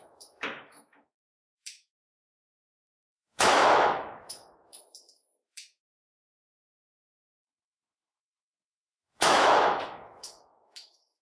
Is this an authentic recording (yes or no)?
no